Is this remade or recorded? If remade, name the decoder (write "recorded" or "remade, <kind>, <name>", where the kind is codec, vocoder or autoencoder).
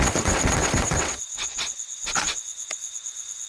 remade, vocoder, WaveNeXt